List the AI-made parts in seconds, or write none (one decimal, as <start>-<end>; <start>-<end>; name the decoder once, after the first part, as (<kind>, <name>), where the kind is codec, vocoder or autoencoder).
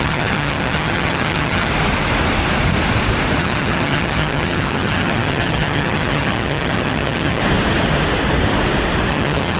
0.0-1.7 (vocoder, HiFi-GAN); 3.4-7.4; 9.1-9.6